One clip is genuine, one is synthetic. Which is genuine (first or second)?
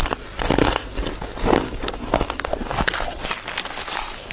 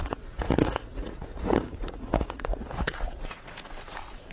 first